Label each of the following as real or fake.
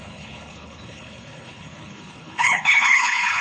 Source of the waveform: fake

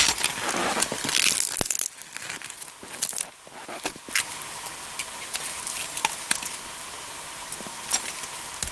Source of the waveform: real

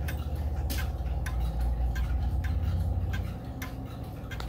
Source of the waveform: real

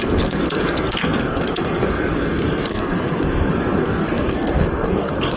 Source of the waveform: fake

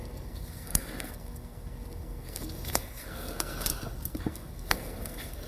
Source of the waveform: fake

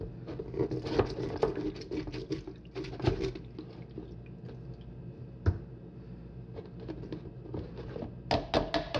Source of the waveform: real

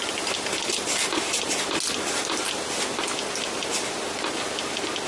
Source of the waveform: real